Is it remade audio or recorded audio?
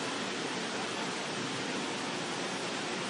recorded